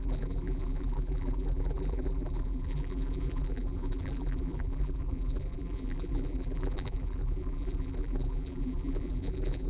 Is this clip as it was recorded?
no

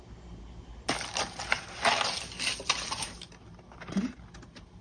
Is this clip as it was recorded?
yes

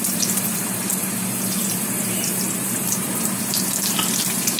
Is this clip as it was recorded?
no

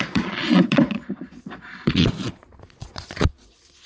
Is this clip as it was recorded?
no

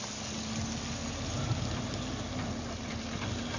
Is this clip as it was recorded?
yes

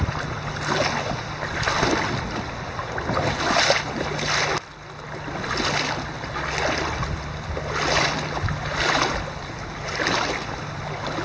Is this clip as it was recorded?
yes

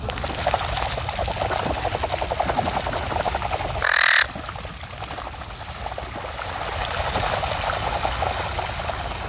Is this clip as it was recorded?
yes